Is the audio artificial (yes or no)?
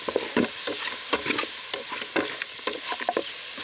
no